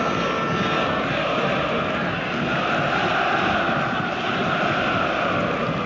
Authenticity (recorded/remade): recorded